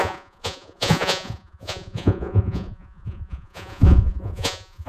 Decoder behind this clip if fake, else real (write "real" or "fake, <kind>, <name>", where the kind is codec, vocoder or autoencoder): fake, vocoder, Vocos